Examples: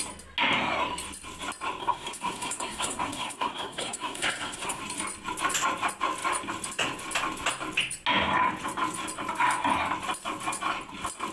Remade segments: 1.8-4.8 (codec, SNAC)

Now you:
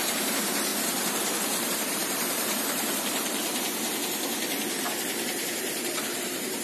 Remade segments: 0.0-0.7 (vocoder, BigVGAN v2); 1.4-3.4; 5.8-6.6

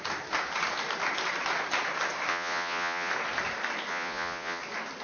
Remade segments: 2.3-3.1 (vocoder, Vocos); 3.9-4.6

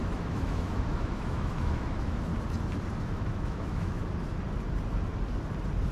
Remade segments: 0.0-2.3 (autoencoder, DAC-VAE); 3.0-4.0

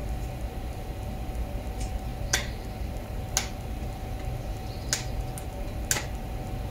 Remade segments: none

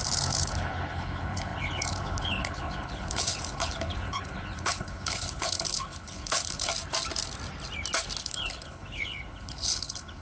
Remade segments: 0.0-6.7 (codec, HILCodec); 8.2-10.2